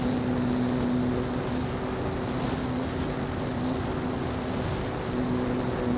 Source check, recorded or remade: recorded